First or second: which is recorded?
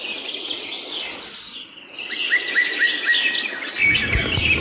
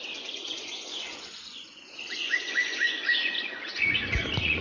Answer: first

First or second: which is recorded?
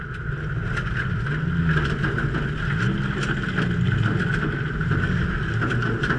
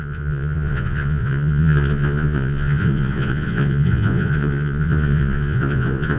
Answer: first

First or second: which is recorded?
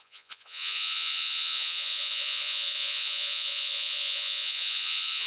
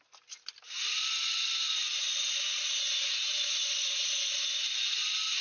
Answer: second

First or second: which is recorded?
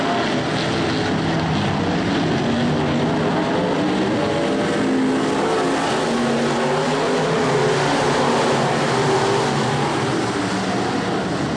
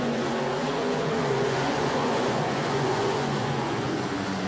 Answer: first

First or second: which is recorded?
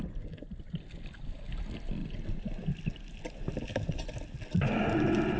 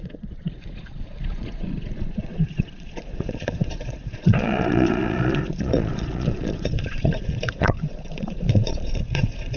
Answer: first